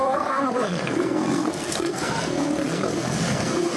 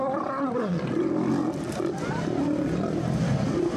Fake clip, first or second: first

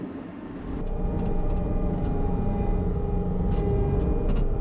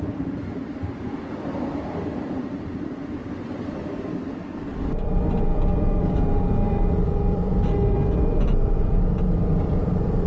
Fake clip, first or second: second